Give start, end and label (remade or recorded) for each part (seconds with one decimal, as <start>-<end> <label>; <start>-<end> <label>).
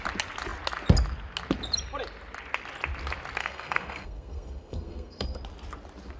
0.0-3.4 recorded; 3.4-5.4 remade; 5.4-6.2 recorded